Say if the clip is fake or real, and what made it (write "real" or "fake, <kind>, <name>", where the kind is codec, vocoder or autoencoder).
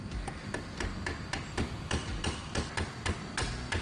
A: real